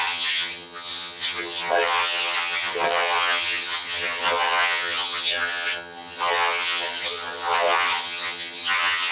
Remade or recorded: remade